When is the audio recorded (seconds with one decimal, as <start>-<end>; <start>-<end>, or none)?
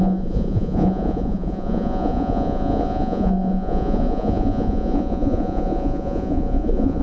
none